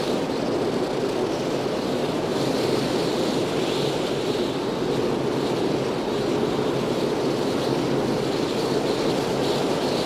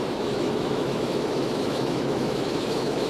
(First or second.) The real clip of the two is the first